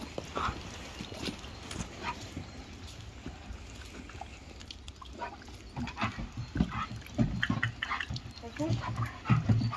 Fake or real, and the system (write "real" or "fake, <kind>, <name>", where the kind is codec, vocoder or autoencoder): real